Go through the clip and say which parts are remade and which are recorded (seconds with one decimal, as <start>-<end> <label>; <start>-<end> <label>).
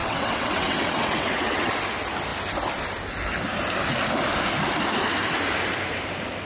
0.0-1.7 remade; 1.7-6.5 recorded